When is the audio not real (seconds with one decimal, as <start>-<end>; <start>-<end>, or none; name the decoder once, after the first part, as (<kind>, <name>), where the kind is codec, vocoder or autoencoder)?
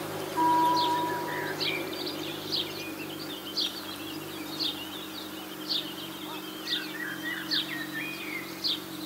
0.7-1.4 (vocoder, BigVGAN v2)